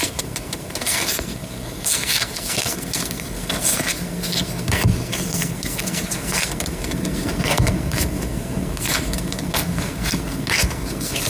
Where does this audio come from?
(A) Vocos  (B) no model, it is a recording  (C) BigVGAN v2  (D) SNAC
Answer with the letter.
D